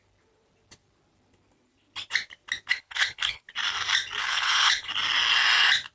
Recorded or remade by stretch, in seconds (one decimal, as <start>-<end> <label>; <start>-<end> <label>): 0.0-2.7 recorded; 2.7-3.4 remade; 3.4-4.2 recorded; 4.2-4.9 remade; 4.9-5.9 recorded